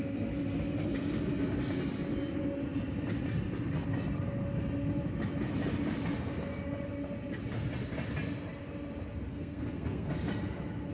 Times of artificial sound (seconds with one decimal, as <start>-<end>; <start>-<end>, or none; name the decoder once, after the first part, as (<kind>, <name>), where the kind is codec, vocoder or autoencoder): 9.3-10.1 (codec, SNAC)